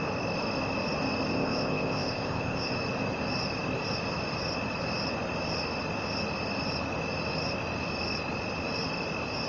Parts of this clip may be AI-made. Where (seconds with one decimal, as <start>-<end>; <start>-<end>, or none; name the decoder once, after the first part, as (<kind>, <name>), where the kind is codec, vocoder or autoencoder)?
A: 1.3-2.7 (codec, ZipCodec)